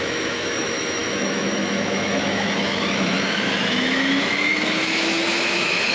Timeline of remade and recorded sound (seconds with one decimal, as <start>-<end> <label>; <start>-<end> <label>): 0.0-5.9 remade